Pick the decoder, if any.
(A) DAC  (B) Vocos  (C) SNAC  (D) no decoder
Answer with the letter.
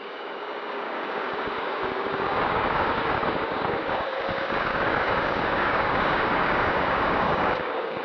A